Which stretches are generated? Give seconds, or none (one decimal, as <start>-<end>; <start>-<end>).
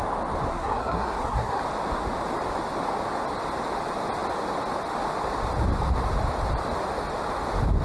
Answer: 0.5-1.6